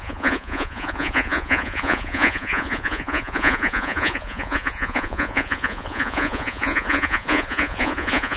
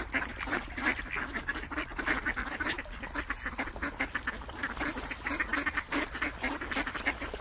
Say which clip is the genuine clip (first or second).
second